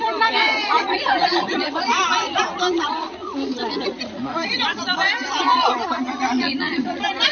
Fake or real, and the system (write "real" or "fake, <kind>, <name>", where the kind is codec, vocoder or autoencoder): fake, vocoder, Vocos